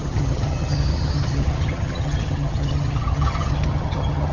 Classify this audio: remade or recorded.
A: remade